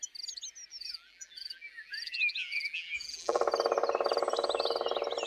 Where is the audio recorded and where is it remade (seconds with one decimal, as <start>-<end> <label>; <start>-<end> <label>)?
0.0-0.7 recorded; 0.7-3.4 remade; 3.4-5.3 recorded

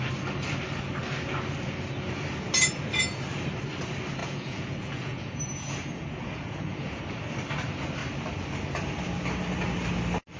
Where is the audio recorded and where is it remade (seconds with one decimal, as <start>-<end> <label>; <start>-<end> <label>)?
0.0-4.2 recorded; 4.2-7.0 remade; 7.0-10.4 recorded

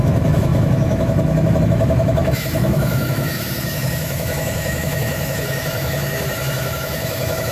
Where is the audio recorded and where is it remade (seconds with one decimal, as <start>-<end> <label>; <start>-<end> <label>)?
0.0-7.5 remade

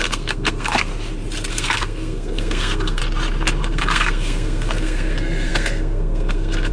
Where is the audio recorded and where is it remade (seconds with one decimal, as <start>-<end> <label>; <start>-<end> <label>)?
0.0-0.9 remade; 0.9-1.5 recorded; 1.5-3.0 remade; 3.0-3.6 recorded; 3.6-6.7 remade

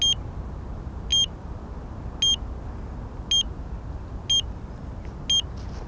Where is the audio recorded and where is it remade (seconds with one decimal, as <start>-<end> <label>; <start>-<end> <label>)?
0.0-5.9 recorded

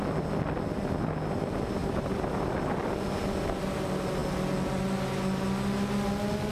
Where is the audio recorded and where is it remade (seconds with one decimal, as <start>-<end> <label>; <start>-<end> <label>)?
0.0-1.8 recorded; 1.8-2.6 remade; 2.6-6.5 recorded

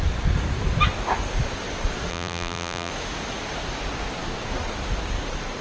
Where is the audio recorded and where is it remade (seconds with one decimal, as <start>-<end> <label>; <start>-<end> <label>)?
0.0-2.1 recorded; 2.1-2.9 remade; 2.9-5.6 recorded